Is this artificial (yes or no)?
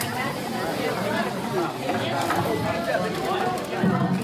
no